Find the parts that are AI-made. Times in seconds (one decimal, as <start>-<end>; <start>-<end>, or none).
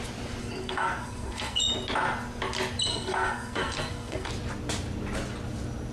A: 0.4-1.6; 2.9-4.3